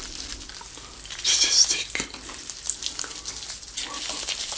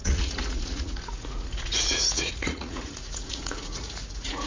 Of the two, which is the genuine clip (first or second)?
first